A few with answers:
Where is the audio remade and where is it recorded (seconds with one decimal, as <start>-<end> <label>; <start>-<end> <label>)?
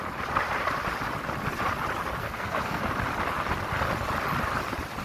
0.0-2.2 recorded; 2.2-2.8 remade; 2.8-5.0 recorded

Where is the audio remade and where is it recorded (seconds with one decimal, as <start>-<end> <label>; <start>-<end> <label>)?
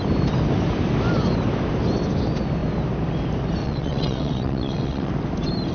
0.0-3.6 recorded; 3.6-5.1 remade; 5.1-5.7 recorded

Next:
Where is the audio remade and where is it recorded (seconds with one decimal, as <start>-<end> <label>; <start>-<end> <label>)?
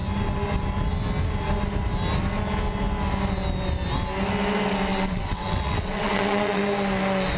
0.0-4.9 recorded; 4.9-6.6 remade; 6.6-7.4 recorded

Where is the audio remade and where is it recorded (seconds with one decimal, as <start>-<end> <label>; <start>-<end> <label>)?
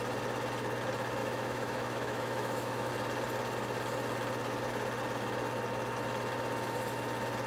0.0-1.2 recorded; 1.2-2.9 remade; 2.9-7.5 recorded